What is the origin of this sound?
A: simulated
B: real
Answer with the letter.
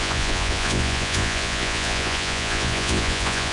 A